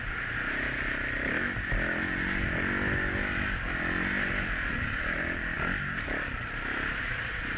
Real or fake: real